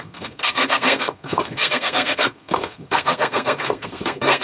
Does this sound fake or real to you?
fake